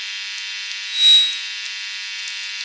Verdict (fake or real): real